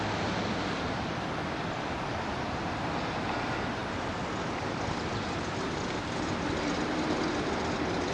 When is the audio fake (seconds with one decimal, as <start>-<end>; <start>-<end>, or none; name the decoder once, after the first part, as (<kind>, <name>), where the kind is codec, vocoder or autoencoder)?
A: none